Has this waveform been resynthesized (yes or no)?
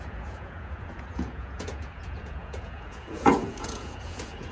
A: yes